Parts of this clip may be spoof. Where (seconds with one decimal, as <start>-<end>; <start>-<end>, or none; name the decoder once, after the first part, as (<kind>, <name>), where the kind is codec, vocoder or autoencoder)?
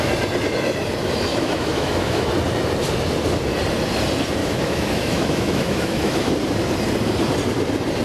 1.3-2.3 (autoencoder, DAC-VAE); 4.4-6.3